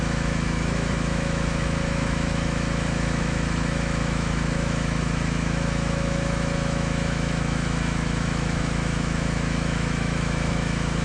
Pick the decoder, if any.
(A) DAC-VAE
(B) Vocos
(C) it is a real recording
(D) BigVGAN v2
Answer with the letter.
A